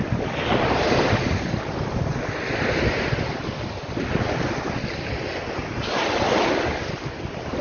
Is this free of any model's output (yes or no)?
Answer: yes